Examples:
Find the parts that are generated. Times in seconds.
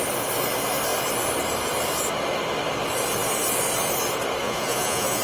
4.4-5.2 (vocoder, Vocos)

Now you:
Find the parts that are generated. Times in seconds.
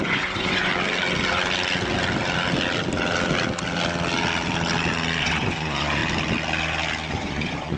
0.0-0.7 (vocoder, Vocos); 5.2-6.0; 7.1-7.8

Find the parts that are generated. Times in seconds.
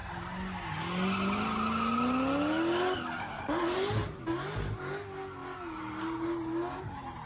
none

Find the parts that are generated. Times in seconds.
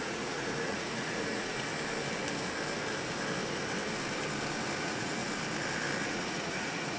0.0-1.7 (vocoder, Vocos); 4.8-5.2; 6.1-7.0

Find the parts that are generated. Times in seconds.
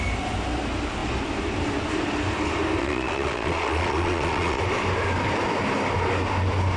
2.8-4.6 (vocoder, Vocos)